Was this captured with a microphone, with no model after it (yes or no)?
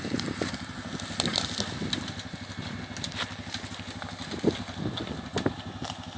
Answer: yes